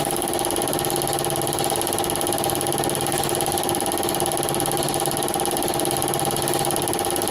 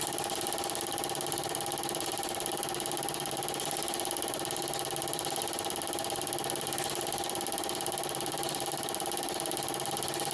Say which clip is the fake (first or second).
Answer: second